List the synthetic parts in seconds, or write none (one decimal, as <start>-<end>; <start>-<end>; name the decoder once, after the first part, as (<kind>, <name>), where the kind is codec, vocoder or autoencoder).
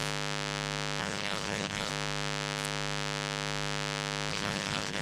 1.0-1.9 (codec, HILCodec); 4.3-5.0